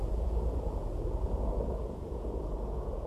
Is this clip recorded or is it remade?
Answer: remade